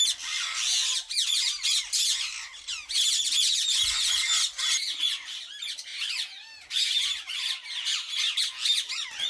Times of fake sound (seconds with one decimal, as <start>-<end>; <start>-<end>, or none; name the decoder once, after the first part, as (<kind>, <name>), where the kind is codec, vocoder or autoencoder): none